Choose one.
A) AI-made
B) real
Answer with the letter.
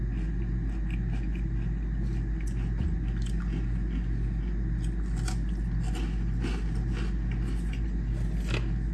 B